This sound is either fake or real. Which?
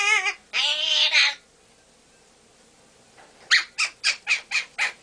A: real